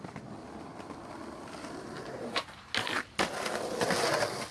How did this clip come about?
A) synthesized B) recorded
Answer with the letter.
B